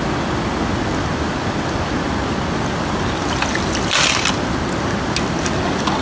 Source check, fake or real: real